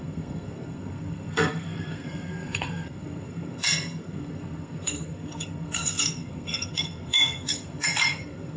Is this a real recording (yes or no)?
no